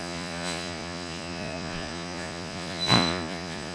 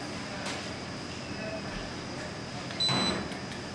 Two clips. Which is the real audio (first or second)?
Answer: second